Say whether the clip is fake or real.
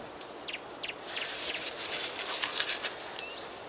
real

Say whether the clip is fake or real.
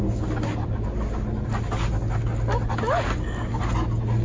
real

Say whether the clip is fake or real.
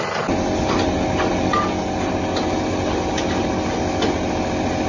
real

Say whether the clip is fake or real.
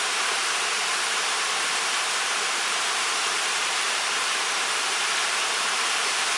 fake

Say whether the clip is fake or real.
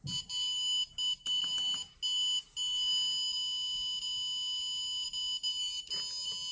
real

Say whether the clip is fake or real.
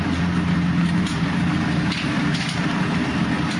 fake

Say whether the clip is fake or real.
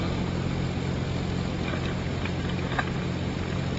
real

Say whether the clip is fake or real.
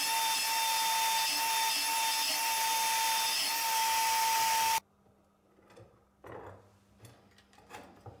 real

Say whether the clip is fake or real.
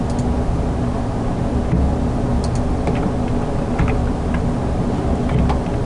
real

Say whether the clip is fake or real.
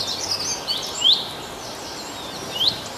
real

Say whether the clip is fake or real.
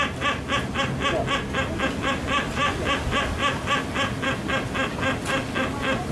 real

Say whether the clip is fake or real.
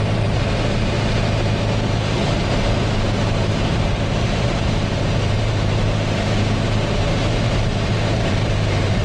fake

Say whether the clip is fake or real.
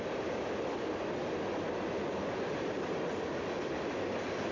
real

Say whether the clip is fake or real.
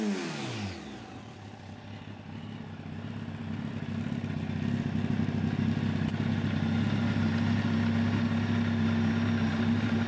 real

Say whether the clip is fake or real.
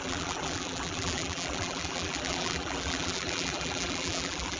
fake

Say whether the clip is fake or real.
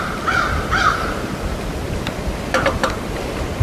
real